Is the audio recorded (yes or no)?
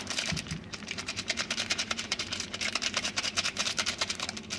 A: no